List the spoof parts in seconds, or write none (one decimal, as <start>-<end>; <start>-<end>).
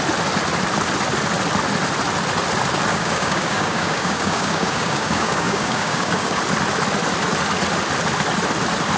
2.9-6.4